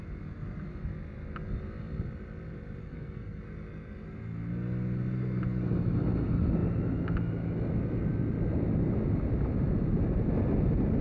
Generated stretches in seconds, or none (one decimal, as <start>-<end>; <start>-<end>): 2.8-3.4